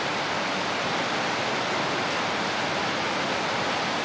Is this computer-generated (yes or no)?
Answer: no